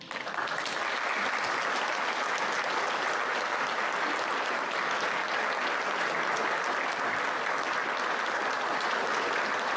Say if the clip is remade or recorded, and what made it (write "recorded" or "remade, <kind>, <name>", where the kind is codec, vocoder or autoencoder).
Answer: recorded